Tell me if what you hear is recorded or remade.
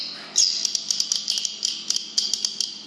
recorded